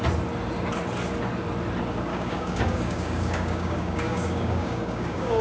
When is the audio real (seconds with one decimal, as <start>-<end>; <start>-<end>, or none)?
0.0-2.1